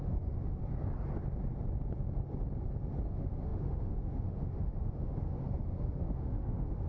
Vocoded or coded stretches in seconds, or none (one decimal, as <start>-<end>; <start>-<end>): 0.0-0.6; 3.1-6.9